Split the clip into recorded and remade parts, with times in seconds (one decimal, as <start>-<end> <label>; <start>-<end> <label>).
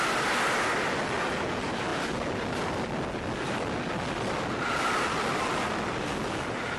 0.0-6.8 recorded